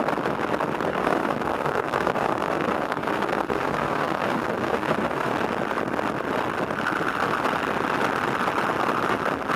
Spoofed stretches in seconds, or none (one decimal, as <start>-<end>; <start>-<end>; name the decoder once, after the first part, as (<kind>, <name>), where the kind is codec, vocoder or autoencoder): 0.9-5.3 (codec, SNAC)

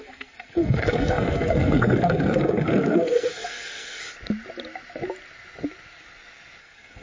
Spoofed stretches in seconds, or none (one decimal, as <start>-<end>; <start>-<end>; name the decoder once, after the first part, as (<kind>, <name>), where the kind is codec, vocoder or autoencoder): 0.0-4.0 (codec, SNAC); 6.6-7.0

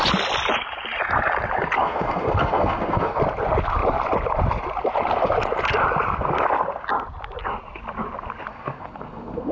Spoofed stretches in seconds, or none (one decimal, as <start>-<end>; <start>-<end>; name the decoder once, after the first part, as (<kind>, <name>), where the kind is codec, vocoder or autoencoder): 1.8-3.2 (codec, SNAC); 8.5-9.5

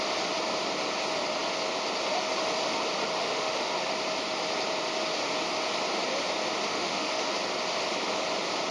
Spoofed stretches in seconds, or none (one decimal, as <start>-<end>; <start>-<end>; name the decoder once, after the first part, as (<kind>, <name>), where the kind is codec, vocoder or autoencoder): 3.2-3.7 (autoencoder, DAC-VAE); 6.7-7.3

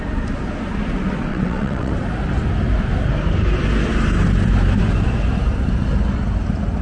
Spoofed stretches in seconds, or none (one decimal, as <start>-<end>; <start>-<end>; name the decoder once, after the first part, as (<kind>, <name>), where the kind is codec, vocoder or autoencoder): 1.3-1.9 (vocoder, WaveNeXt)

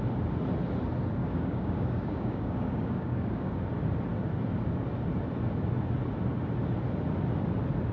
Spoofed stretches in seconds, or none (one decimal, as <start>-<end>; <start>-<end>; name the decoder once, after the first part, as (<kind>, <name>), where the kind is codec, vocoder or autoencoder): 1.2-3.5 (codec, DAC)

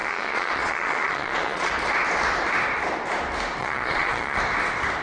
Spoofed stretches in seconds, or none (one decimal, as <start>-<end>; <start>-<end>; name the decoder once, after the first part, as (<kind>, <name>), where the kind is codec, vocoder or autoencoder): 0.0-1.7 (vocoder, Vocos); 3.6-4.4